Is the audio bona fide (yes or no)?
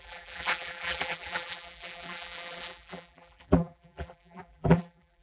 no